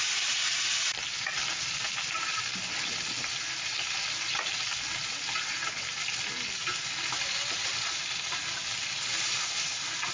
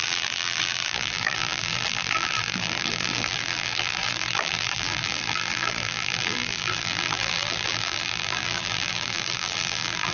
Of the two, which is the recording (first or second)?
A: first